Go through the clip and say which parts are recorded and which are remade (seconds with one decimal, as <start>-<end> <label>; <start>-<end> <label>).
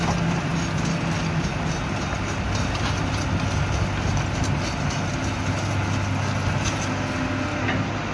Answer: 0.0-8.1 recorded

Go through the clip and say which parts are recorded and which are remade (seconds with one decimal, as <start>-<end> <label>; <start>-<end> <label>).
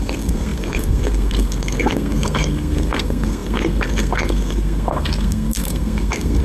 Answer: 0.0-6.4 remade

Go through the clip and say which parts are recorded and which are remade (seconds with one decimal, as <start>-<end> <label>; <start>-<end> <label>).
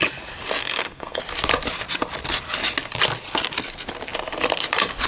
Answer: 0.0-0.6 recorded; 0.6-1.2 remade; 1.2-5.1 recorded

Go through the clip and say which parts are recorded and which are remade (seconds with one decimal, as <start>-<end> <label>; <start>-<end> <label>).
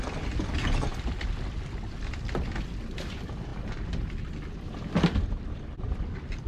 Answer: 0.0-6.5 recorded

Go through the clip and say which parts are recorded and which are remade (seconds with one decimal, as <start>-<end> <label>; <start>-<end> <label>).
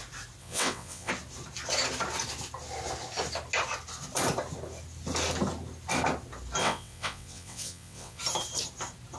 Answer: 0.0-0.4 recorded; 0.4-1.1 remade; 1.1-6.6 recorded; 6.6-8.2 remade; 8.2-9.2 recorded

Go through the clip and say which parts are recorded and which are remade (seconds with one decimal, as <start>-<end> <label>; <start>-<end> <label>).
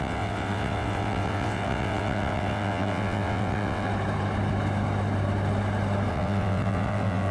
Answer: 0.0-3.9 remade; 3.9-6.1 recorded; 6.1-7.3 remade